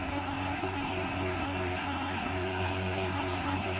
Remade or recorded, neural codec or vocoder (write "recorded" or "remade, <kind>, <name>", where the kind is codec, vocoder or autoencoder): remade, codec, SNAC